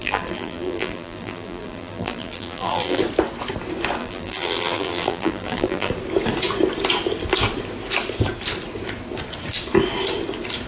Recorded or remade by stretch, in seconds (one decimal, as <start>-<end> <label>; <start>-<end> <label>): 0.0-3.0 remade; 3.0-4.0 recorded; 4.0-5.9 remade; 5.9-10.7 recorded